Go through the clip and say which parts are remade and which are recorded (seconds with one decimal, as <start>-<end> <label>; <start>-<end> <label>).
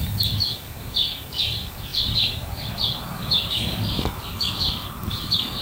0.0-5.6 remade